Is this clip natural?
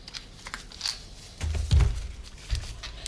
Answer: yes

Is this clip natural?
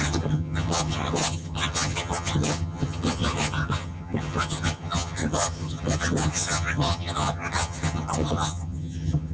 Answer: no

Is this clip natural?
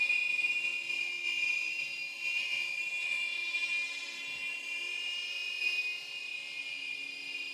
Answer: yes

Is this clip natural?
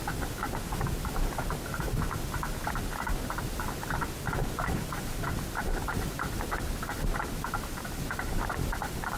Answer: yes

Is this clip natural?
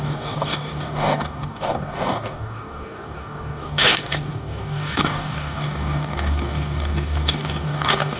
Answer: no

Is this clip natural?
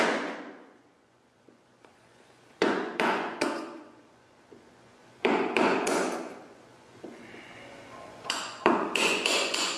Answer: no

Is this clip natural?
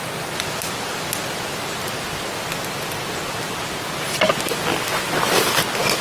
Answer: yes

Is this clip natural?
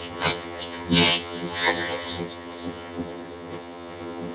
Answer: no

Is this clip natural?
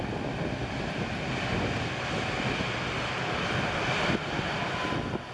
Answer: yes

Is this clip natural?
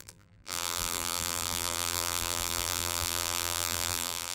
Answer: no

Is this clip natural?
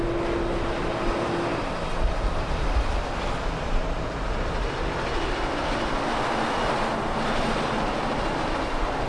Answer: yes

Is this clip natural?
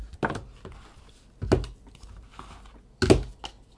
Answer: yes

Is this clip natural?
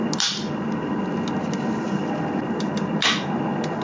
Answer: yes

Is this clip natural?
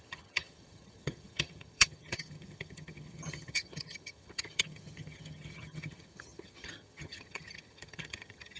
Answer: no